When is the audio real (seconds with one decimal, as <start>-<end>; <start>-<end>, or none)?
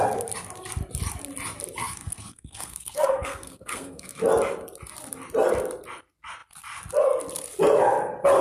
0.0-1.8; 4.2-8.4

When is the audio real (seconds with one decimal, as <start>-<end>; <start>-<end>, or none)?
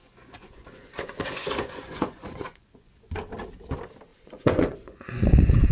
3.0-4.1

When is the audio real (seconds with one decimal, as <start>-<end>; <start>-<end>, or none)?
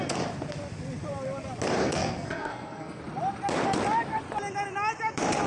0.0-1.8; 3.0-5.5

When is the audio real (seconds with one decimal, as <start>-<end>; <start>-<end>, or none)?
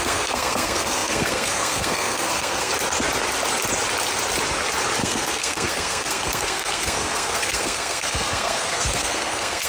2.7-5.0